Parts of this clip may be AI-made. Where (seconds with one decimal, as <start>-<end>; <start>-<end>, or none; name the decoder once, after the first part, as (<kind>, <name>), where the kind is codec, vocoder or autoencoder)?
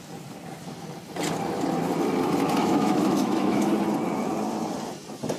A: 2.6-3.7 (autoencoder, DAC-VAE)